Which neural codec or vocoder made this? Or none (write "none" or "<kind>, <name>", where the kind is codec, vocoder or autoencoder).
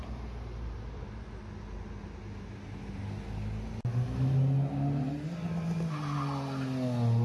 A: none